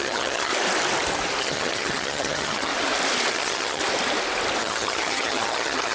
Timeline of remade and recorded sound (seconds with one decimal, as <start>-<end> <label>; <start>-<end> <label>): 0.0-0.5 remade; 0.5-1.4 recorded; 1.4-2.7 remade; 2.7-3.3 recorded; 3.3-3.8 remade; 3.8-4.6 recorded; 4.6-5.9 remade